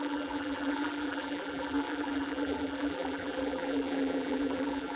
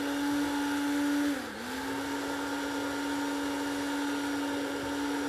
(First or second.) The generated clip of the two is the first